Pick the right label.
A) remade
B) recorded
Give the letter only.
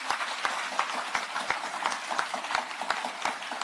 B